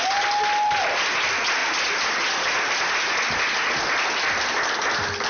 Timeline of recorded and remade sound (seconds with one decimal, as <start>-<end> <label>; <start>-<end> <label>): 0.0-5.3 recorded